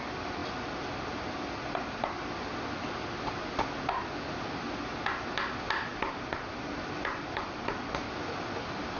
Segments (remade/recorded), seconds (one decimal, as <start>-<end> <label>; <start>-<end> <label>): 0.0-5.9 recorded; 5.9-7.9 remade; 7.9-9.0 recorded